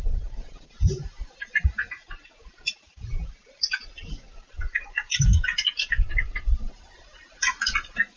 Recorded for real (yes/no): no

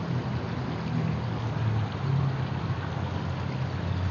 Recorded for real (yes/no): yes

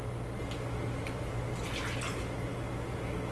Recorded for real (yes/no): yes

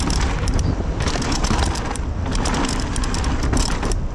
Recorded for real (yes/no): yes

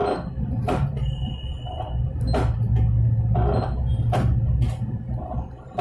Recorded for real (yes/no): yes